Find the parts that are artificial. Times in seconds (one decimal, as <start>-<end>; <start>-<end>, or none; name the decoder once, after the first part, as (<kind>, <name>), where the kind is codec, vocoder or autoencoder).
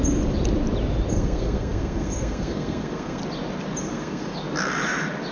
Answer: 1.1-3.2 (codec, SNAC); 3.8-4.3